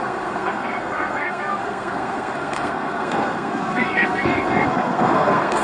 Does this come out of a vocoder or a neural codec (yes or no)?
yes